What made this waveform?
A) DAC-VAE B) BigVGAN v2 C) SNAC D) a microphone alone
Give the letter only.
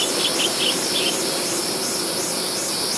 D